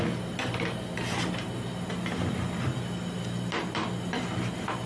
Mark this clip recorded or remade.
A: recorded